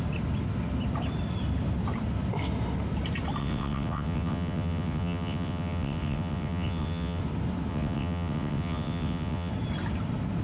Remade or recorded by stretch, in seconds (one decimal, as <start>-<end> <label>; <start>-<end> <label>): 0.0-3.4 recorded; 3.4-7.2 remade; 7.2-7.7 recorded; 7.7-9.5 remade; 9.5-10.4 recorded